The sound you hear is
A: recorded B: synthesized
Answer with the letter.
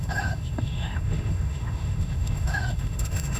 B